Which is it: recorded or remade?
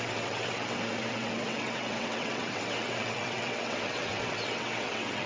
remade